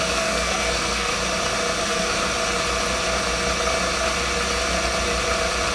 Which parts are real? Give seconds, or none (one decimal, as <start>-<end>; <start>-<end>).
1.1-1.8; 2.2-5.7

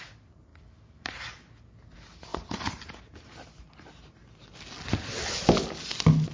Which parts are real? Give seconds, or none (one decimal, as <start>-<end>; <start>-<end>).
0.0-6.3

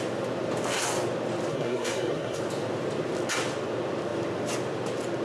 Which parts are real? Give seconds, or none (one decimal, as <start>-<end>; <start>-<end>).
0.0-1.5; 2.4-5.2

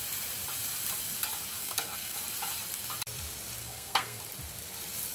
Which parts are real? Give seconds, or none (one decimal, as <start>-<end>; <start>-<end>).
0.0-1.6; 2.2-3.6; 4.2-5.1

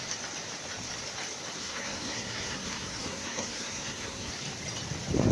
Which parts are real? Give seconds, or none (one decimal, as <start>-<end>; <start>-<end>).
0.0-1.6; 4.3-5.3